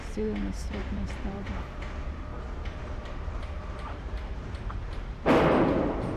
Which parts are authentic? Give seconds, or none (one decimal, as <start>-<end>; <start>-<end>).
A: 0.0-0.8; 1.8-2.8; 5.0-6.2